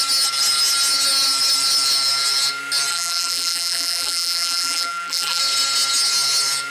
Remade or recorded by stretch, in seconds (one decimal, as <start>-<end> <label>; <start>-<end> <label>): 0.0-2.9 recorded; 2.9-5.4 remade; 5.4-6.7 recorded

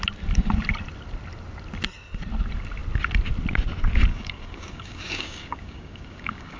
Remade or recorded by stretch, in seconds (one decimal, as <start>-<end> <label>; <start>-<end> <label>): 0.0-4.1 recorded; 4.1-6.6 remade

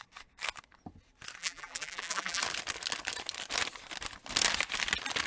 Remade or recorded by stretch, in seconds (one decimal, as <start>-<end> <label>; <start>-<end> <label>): 0.0-1.4 recorded; 1.4-2.4 remade; 2.4-5.3 recorded